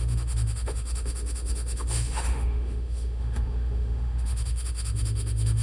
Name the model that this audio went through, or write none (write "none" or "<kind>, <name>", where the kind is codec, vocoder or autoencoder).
autoencoder, DAC-VAE